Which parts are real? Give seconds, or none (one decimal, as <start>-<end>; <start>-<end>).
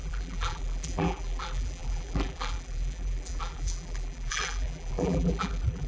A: none